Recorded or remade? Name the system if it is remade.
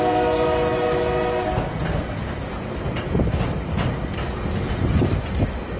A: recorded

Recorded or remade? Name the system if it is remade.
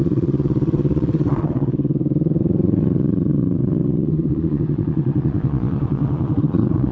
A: remade, vocoder, Vocos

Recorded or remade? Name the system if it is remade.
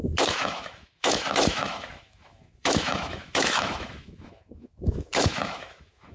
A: remade, autoencoder, DAC-VAE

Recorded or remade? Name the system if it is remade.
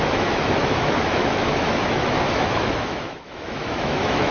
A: remade, autoencoder, DAC-VAE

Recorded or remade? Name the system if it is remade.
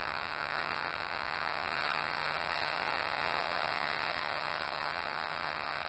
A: remade, vocoder, HiFi-GAN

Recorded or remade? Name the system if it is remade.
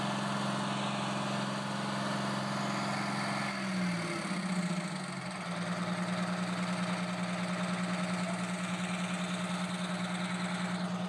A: recorded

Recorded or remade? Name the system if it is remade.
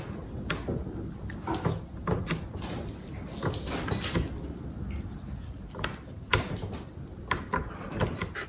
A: recorded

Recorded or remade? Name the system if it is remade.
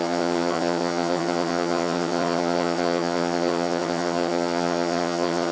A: remade, vocoder, HiFi-GAN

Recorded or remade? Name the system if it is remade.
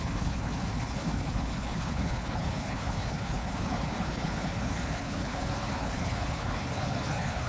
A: remade, codec, HILCodec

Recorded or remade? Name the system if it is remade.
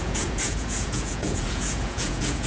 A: remade, vocoder, Vocos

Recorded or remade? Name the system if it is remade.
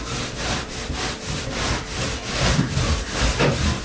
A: recorded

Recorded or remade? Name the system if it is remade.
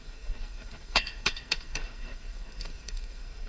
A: remade, codec, SNAC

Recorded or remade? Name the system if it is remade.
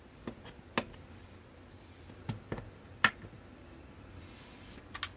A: recorded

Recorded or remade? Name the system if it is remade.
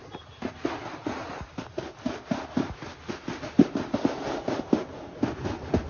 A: recorded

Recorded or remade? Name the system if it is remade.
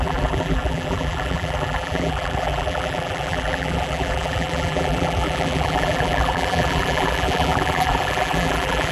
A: remade, vocoder, BigVGAN v2